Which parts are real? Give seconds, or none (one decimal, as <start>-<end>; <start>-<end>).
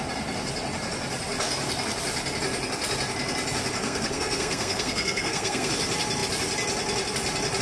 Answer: 0.0-3.8; 5.7-7.6